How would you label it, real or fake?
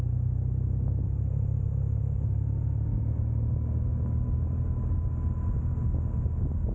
real